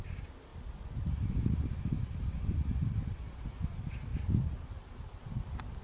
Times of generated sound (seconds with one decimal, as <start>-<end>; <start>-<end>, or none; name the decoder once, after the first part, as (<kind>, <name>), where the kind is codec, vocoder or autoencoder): none